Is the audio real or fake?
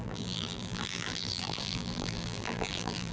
fake